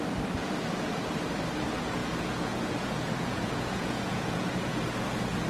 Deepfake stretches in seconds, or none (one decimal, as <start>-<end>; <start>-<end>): 2.0-4.8